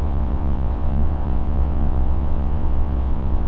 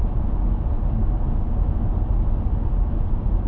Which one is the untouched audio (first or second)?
second